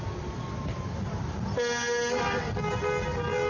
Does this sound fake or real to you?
real